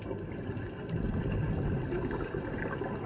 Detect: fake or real real